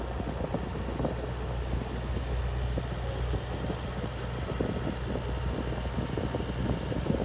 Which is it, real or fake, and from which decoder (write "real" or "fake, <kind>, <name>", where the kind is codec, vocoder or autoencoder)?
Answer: real